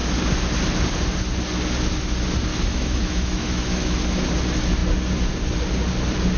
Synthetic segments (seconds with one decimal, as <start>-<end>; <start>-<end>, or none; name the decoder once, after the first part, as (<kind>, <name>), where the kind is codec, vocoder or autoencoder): 2.5-4.0 (autoencoder, DAC-VAE)